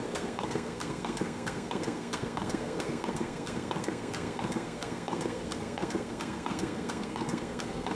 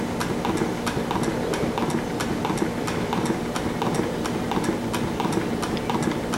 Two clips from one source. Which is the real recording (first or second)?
second